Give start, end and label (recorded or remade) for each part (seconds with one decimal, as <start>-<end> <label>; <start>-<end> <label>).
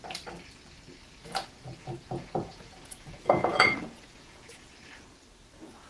0.0-1.2 recorded; 1.2-4.7 remade; 4.7-5.9 recorded